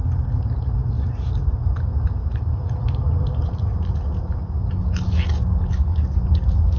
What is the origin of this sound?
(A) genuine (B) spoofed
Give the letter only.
A